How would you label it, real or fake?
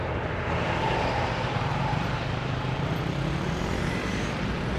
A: fake